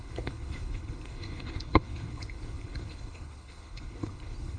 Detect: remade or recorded remade